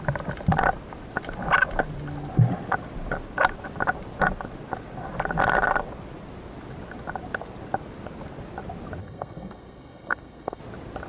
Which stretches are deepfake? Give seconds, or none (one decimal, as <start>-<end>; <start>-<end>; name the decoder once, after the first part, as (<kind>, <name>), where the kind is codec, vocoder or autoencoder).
9.0-10.6 (codec, SNAC)